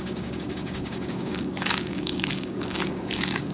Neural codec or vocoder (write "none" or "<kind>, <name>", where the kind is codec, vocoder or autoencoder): codec, DAC